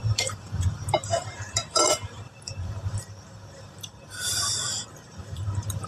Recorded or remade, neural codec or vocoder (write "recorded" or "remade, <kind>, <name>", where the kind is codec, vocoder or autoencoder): remade, vocoder, BigVGAN v2